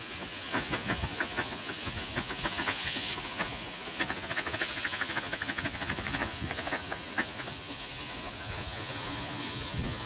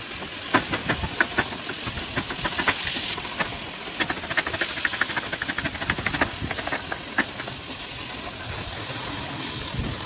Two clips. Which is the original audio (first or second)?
second